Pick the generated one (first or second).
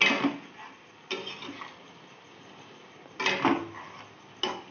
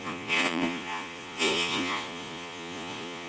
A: second